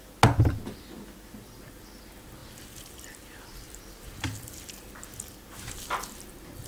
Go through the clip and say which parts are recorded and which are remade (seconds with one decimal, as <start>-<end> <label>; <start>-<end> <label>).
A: 0.0-2.4 recorded; 2.4-4.7 remade; 4.7-6.7 recorded